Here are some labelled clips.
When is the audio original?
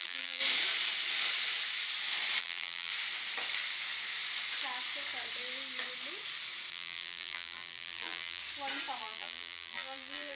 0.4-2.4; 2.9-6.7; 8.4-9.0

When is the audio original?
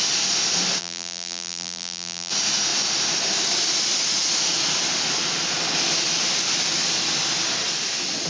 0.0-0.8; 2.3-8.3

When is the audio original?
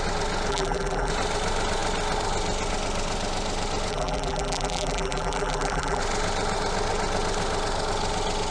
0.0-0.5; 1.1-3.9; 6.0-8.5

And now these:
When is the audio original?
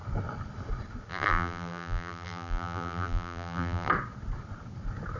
0.0-1.1; 3.9-5.2